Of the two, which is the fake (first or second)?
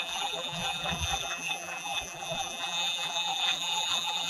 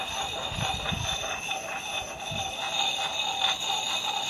first